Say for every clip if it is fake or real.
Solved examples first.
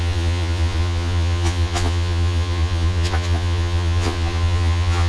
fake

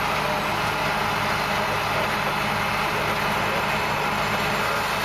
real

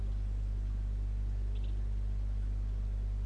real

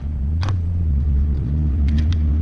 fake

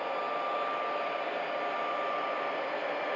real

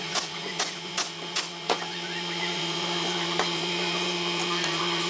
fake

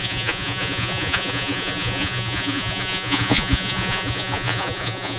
fake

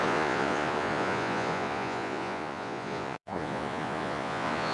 fake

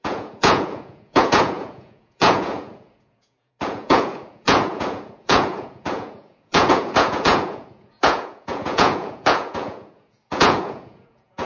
fake